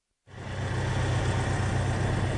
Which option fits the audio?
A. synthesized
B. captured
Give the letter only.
B